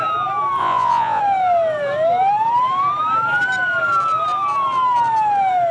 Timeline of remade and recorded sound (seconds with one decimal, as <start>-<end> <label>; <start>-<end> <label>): 0.0-0.6 recorded; 0.6-1.2 remade; 1.2-5.7 recorded